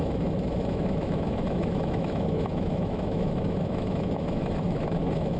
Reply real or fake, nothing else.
fake